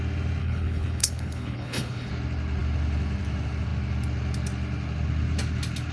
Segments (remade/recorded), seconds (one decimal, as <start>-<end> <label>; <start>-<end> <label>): 0.0-0.4 recorded; 0.4-2.1 remade; 2.1-5.9 recorded